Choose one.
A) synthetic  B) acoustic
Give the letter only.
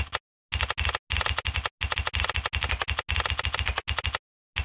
B